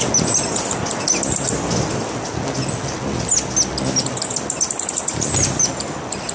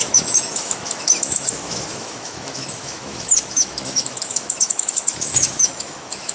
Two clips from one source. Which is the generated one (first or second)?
second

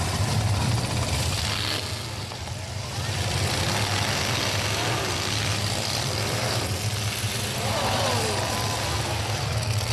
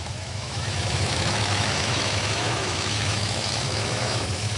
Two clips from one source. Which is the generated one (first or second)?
second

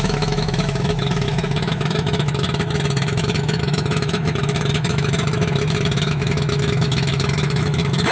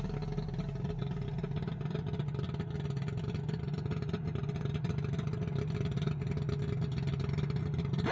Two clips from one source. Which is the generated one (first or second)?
first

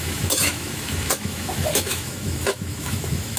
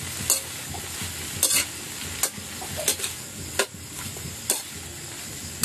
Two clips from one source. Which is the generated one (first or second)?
first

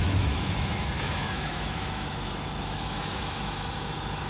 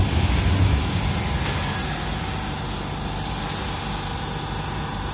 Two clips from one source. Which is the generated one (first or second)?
first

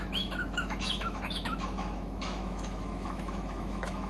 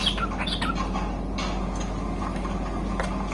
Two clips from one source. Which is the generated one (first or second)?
first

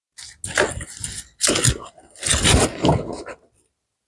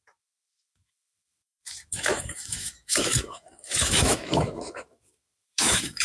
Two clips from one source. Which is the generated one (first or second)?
second